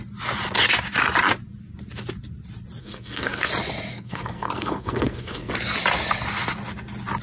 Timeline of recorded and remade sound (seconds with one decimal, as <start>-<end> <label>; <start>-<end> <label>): 0.0-2.8 recorded; 2.8-3.5 remade; 3.5-3.9 recorded; 3.9-5.5 remade; 5.5-7.2 recorded

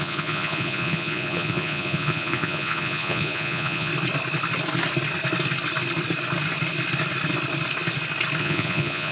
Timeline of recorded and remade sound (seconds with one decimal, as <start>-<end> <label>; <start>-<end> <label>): 0.0-3.9 remade; 3.9-8.4 recorded; 8.4-9.1 remade